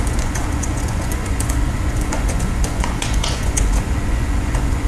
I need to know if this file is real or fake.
fake